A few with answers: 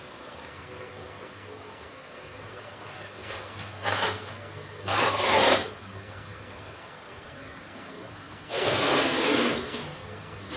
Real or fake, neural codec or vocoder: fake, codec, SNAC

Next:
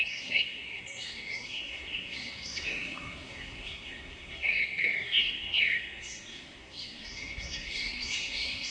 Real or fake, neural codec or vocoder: fake, codec, SNAC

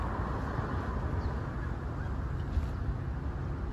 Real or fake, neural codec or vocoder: real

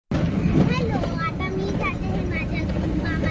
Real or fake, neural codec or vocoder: real